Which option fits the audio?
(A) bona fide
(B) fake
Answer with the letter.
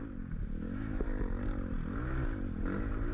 A